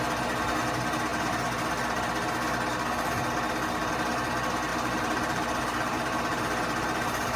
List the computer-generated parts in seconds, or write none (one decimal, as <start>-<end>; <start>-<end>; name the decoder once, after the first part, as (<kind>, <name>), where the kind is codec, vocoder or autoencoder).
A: 4.7-7.4 (vocoder, BigVGAN v2)